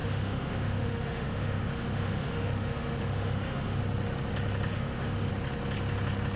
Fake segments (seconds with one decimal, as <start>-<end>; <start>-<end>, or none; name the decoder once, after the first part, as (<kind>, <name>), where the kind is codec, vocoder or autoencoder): 0.0-3.8 (autoencoder, DAC-VAE); 4.7-5.3